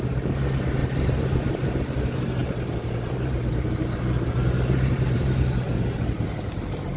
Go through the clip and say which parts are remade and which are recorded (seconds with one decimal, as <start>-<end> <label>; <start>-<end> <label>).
0.0-0.8 recorded; 0.8-1.7 remade; 1.7-2.4 recorded; 2.4-6.6 remade; 6.6-7.0 recorded